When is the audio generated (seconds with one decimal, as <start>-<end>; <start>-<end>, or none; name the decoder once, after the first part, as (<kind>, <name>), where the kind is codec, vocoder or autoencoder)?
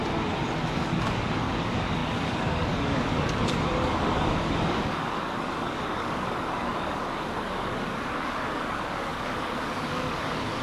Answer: 0.6-10.6 (codec, DAC)